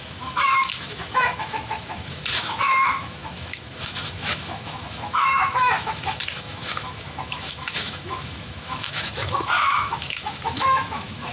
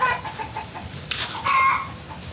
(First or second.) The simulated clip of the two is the first